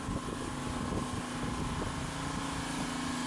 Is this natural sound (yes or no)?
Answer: yes